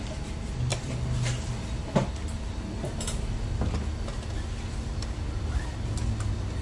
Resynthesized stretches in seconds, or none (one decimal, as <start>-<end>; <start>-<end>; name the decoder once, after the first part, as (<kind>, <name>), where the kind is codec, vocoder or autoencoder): none